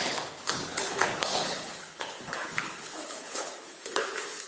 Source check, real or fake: fake